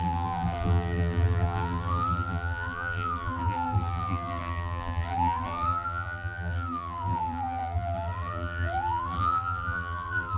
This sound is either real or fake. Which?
fake